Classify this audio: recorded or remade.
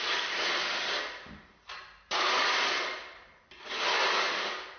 recorded